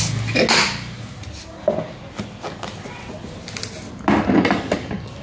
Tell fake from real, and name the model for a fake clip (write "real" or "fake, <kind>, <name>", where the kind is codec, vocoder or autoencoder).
real